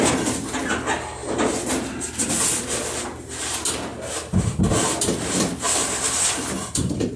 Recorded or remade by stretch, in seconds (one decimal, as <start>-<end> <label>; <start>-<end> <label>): 0.0-3.9 recorded; 3.9-7.2 remade